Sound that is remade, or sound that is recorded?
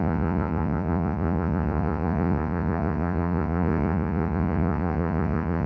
remade